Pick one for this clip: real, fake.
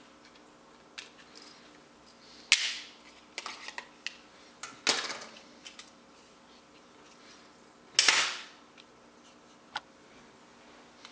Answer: real